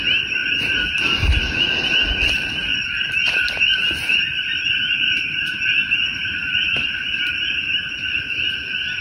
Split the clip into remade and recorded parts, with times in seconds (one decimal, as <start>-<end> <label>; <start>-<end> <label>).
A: 0.0-4.1 recorded; 4.1-5.6 remade; 5.6-6.1 recorded; 6.1-7.8 remade; 7.8-9.0 recorded